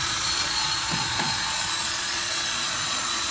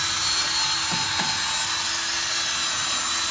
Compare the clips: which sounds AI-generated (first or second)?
first